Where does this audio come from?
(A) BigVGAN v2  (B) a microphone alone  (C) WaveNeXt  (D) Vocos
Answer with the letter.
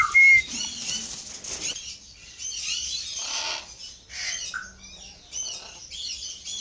B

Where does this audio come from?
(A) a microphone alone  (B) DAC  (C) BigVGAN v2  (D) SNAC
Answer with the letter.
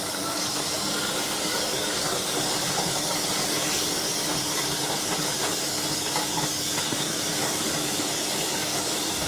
B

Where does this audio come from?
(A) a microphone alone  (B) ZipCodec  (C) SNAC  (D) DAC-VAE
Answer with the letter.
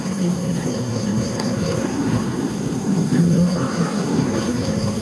C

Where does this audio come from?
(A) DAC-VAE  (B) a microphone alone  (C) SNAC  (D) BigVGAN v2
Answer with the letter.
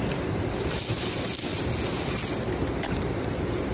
B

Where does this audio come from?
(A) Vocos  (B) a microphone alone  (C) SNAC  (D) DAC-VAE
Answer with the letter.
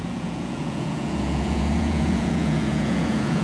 A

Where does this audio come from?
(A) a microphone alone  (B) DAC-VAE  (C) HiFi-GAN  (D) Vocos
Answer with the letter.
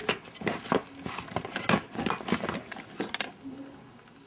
A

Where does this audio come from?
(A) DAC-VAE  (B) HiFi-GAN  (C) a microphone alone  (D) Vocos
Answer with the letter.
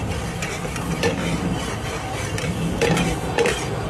C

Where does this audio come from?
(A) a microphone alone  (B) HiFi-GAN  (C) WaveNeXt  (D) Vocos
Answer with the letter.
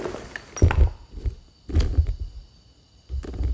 A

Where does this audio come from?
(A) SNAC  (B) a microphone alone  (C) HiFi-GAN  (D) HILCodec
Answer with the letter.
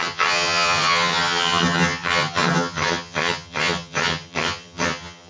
C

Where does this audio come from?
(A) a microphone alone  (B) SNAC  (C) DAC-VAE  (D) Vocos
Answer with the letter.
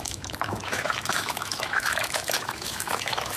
C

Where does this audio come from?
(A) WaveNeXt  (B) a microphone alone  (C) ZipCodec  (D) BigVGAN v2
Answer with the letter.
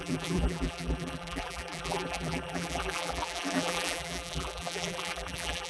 D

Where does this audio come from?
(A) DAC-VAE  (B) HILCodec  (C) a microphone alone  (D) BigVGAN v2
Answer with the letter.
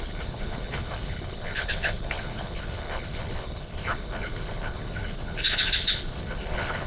B